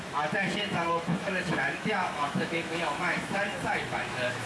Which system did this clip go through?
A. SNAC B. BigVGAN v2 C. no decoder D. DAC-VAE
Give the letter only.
D